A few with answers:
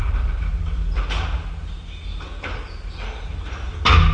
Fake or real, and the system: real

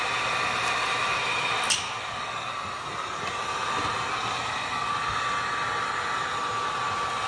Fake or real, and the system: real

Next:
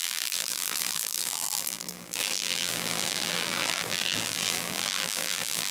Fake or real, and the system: fake, vocoder, BigVGAN v2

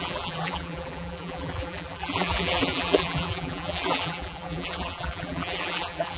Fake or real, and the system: fake, vocoder, BigVGAN v2